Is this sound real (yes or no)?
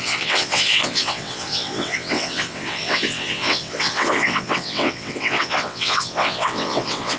no